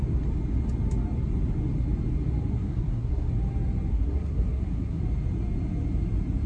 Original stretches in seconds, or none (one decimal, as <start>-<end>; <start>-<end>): 0.0-2.5; 3.3-3.9; 5.0-6.5